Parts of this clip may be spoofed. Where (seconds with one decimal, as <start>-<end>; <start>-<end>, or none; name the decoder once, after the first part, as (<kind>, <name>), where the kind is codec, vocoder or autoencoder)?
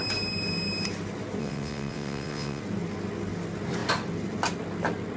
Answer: 1.4-2.6 (vocoder, WaveNeXt)